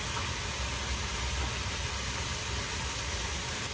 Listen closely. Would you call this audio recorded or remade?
recorded